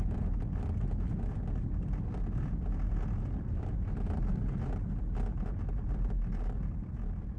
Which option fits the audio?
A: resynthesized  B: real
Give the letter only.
B